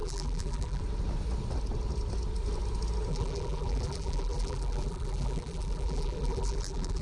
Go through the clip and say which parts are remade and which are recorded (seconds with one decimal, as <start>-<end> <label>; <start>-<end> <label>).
0.0-0.8 remade; 0.8-3.1 recorded; 3.1-7.0 remade